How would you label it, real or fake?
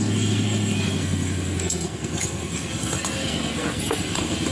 fake